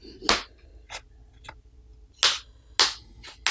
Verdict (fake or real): real